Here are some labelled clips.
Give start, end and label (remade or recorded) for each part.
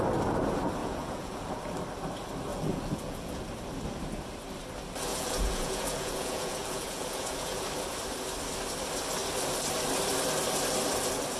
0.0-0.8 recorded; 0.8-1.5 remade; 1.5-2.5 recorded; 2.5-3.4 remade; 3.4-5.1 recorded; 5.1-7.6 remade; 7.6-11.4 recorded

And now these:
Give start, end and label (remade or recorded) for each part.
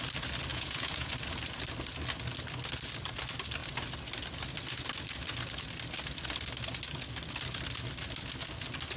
0.0-0.5 recorded; 0.5-1.1 remade; 1.1-9.0 recorded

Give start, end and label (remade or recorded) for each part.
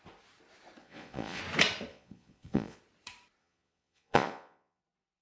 0.0-0.8 recorded; 0.8-1.4 remade; 1.4-1.9 recorded; 1.9-2.8 remade; 2.8-3.4 recorded; 3.4-4.8 remade; 4.8-5.2 recorded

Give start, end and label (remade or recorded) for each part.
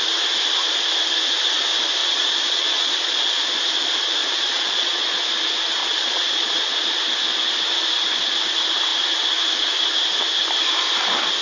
0.0-2.0 recorded; 2.0-3.5 remade; 3.5-4.2 recorded; 4.2-5.2 remade; 5.2-5.8 recorded; 5.8-6.8 remade; 6.8-11.4 recorded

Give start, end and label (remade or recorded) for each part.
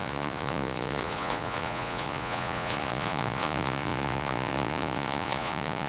0.0-5.9 remade